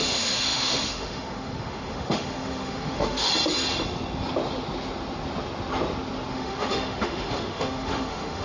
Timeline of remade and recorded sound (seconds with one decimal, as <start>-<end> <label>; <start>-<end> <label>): 0.0-3.3 remade; 3.3-6.3 recorded; 6.3-8.4 remade

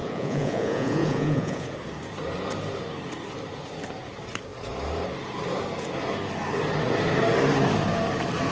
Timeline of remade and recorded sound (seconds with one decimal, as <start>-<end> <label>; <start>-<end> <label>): 0.0-1.7 remade; 1.7-8.5 recorded